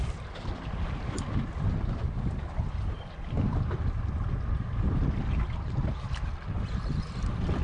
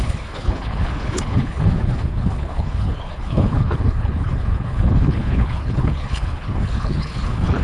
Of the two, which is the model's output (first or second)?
second